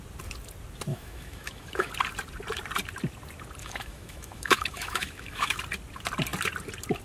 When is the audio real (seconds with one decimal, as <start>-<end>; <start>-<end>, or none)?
0.0-0.9; 1.9-3.6; 5.6-7.0